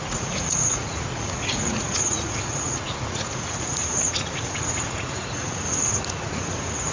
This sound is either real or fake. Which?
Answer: fake